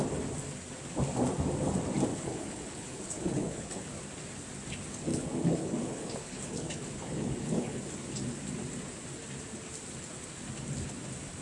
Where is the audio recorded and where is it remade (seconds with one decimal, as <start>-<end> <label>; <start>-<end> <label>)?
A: 0.0-2.1 recorded; 2.1-4.0 remade; 4.0-5.1 recorded; 5.1-7.8 remade; 7.8-11.4 recorded